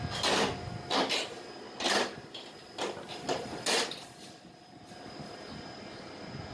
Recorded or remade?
recorded